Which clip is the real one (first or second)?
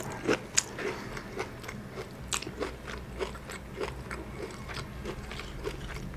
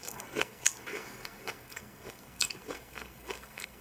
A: first